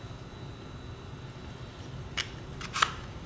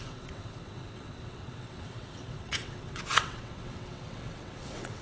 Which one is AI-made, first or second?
second